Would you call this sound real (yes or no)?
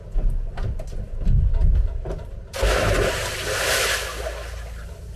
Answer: yes